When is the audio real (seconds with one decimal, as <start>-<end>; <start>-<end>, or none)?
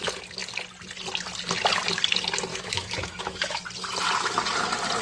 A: 0.0-2.5; 3.6-5.0